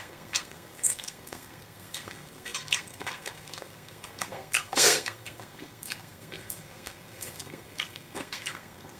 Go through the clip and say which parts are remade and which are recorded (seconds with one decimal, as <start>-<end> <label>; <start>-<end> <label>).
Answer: 0.0-9.0 remade

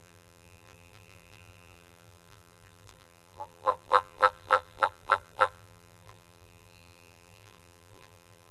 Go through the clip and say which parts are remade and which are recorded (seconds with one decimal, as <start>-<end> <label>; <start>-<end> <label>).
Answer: 0.0-8.5 remade